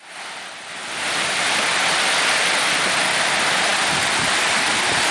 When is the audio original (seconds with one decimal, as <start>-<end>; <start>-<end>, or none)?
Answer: 0.0-5.1